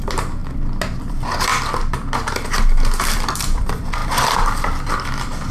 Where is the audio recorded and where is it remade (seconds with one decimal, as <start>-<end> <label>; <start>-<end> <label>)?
0.0-0.4 remade; 0.4-1.0 recorded; 1.0-1.5 remade; 1.5-3.0 recorded; 3.0-5.5 remade